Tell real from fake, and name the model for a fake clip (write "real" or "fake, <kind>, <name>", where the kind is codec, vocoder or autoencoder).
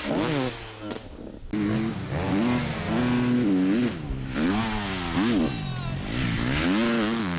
real